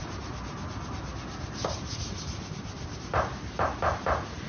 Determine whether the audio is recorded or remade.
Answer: recorded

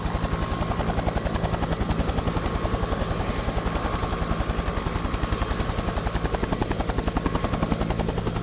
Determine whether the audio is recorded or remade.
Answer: recorded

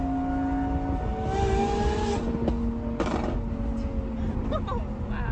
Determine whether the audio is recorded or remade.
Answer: recorded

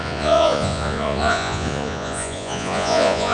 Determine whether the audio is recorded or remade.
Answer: remade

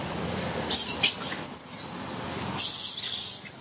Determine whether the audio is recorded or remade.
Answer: recorded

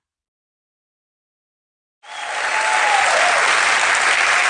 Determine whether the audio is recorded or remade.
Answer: recorded